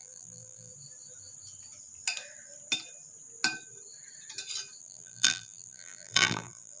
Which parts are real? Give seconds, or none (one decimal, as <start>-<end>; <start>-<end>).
0.7-4.8